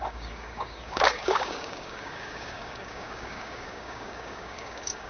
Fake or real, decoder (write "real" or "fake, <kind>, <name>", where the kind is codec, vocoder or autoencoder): fake, codec, DAC